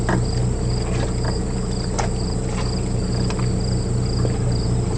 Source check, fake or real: real